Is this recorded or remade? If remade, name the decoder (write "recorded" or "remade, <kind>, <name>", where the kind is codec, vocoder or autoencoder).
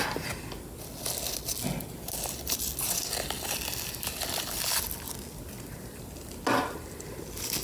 recorded